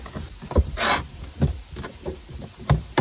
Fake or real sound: real